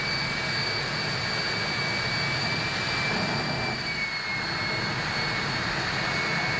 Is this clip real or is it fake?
real